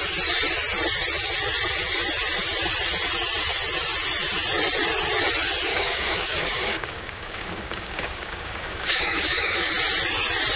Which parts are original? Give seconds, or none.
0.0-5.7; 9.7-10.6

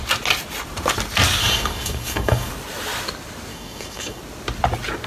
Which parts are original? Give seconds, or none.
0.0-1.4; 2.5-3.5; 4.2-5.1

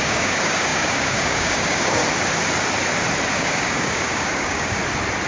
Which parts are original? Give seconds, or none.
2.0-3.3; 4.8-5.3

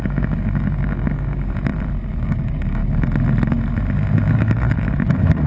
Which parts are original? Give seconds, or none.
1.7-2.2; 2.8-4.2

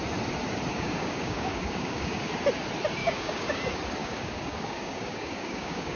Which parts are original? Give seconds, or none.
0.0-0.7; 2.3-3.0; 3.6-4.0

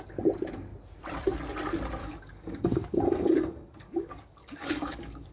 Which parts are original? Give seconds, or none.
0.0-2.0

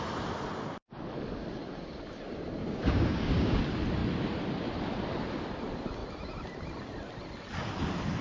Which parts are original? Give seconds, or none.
0.0-2.6; 3.6-8.2

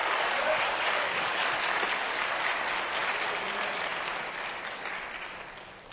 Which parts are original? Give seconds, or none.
1.5-5.9